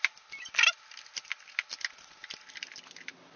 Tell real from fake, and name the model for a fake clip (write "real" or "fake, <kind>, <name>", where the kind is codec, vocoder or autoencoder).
real